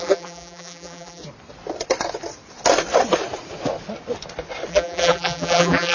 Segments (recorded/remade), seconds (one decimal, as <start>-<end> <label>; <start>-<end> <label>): 0.0-1.2 remade; 1.2-4.7 recorded; 4.7-5.9 remade